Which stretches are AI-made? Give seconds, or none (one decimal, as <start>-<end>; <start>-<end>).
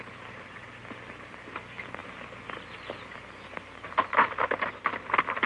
none